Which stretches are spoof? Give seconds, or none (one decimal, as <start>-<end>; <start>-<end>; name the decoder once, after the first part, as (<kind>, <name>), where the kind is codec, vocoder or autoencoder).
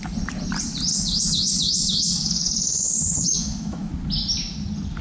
0.9-3.9 (autoencoder, DAC-VAE)